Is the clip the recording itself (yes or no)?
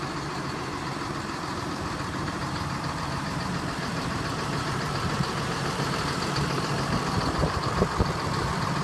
no